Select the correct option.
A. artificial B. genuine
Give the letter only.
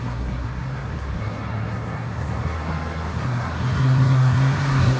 A